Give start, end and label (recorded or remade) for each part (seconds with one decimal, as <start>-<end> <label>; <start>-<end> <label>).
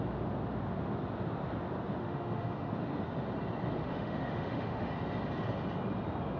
0.0-2.0 recorded; 2.0-2.7 remade; 2.7-3.9 recorded; 3.9-4.9 remade; 4.9-6.4 recorded